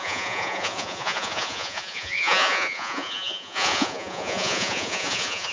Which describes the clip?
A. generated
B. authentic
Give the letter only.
A